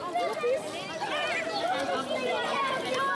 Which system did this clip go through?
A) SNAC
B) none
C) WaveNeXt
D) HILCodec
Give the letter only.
B